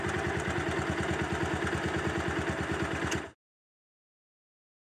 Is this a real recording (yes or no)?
yes